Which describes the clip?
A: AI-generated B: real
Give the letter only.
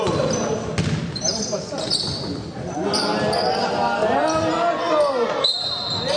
B